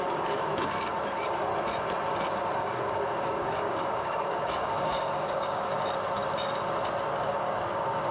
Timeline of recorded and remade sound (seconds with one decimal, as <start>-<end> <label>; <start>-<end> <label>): 0.0-1.5 remade; 1.5-2.6 recorded; 2.6-5.7 remade; 5.7-7.3 recorded; 7.3-8.1 remade